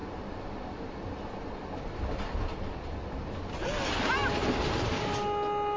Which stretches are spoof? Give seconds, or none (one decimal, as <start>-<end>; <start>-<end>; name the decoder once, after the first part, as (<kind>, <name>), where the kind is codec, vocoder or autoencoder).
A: none